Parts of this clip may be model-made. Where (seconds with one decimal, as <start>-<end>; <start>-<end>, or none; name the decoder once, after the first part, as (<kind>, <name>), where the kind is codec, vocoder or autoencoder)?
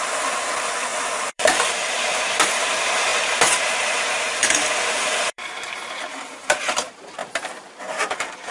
0.0-8.5 (vocoder, BigVGAN v2)